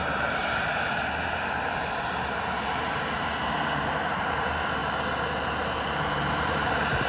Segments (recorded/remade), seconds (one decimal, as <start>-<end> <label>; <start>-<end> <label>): 0.0-4.8 remade; 4.8-5.6 recorded; 5.6-7.1 remade